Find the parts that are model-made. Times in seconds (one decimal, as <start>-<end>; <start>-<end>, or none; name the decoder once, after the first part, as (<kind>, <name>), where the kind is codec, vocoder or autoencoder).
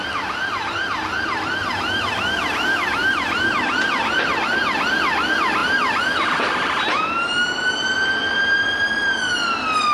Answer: 3.0-3.9 (vocoder, BigVGAN v2)